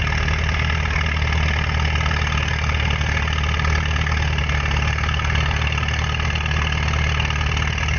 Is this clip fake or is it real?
real